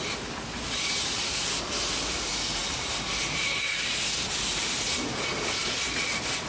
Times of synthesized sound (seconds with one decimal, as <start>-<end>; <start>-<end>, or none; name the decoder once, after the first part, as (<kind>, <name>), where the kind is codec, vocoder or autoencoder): none